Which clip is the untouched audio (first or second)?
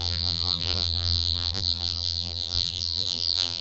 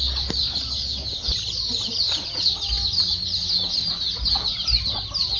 second